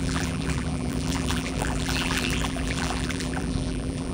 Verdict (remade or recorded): remade